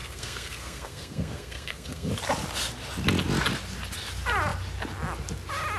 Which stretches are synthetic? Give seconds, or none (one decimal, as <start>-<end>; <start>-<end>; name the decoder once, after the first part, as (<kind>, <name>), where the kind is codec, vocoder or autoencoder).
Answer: 0.0-2.1 (codec, SNAC)